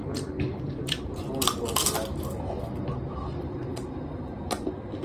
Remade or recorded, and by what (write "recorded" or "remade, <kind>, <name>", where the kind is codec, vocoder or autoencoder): recorded